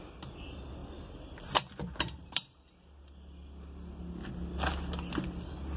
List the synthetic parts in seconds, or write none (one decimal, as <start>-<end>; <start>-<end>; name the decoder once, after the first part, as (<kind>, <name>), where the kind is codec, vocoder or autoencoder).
0.8-2.6 (vocoder, BigVGAN v2)